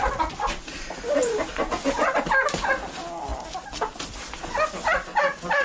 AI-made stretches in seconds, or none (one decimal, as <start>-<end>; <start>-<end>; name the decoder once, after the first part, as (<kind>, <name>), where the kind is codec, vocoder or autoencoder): none